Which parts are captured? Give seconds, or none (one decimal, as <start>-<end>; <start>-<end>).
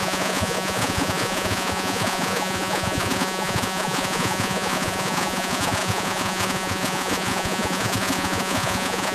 none